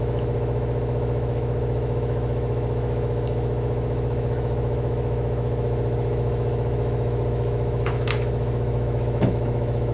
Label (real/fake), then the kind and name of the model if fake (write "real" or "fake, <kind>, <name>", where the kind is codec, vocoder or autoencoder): fake, autoencoder, DAC-VAE